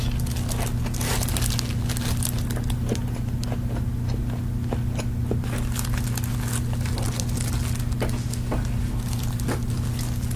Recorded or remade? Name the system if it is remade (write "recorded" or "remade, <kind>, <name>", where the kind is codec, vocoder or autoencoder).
recorded